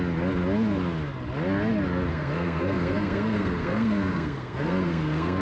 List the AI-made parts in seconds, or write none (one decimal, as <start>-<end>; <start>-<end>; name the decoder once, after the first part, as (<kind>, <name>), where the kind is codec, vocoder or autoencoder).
2.1-5.4 (codec, SNAC)

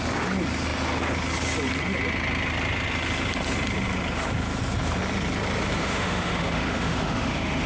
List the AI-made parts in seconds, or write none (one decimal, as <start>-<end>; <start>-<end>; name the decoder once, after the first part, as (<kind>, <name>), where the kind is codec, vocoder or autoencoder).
5.8-7.7 (autoencoder, DAC-VAE)

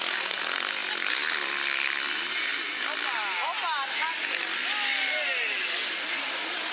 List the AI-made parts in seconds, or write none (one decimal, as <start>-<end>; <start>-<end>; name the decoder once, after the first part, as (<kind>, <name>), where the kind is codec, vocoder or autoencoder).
none